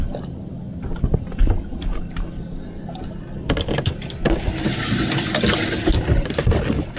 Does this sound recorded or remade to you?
recorded